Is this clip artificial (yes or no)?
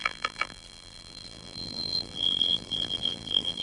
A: yes